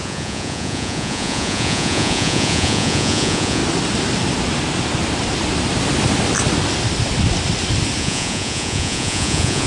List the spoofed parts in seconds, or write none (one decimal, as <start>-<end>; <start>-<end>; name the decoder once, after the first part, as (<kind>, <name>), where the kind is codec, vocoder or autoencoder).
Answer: 0.0-3.6 (vocoder, Vocos); 8.0-9.7